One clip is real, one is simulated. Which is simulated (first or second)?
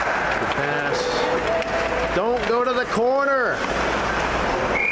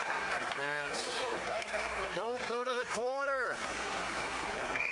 second